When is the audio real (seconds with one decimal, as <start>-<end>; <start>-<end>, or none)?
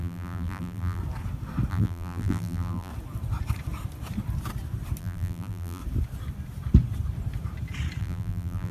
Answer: 1.0-1.7; 2.9-5.0; 5.8-8.0